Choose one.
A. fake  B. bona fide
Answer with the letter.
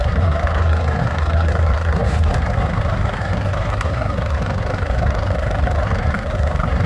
A